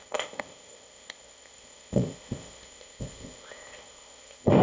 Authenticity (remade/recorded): remade